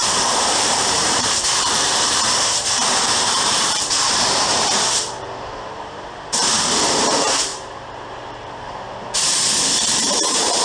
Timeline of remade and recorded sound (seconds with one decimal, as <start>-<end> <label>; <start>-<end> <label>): 0.0-10.6 remade